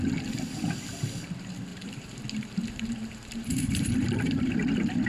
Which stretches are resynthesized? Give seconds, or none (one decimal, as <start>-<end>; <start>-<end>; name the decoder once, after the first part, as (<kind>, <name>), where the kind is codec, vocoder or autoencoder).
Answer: 1.7-4.5 (vocoder, BigVGAN v2)